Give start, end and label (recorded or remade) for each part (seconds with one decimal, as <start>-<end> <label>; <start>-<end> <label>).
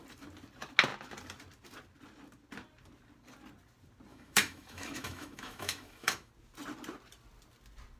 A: 0.0-4.1 recorded; 4.1-6.3 remade; 6.3-8.0 recorded